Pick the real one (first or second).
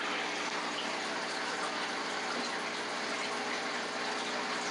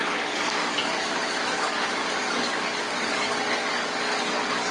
first